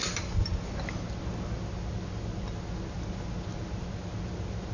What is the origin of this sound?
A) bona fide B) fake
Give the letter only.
A